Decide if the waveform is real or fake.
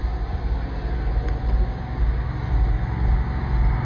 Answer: real